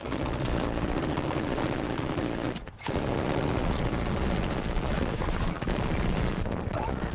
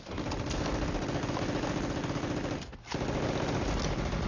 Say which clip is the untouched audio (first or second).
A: second